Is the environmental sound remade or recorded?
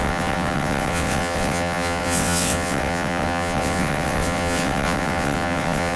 remade